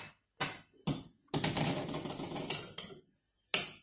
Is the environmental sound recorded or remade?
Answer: recorded